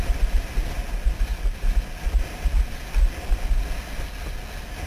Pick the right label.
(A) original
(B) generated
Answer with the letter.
A